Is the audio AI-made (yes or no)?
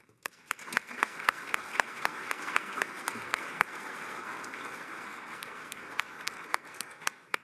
yes